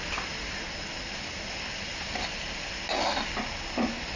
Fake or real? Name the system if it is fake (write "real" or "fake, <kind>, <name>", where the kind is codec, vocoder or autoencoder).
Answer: real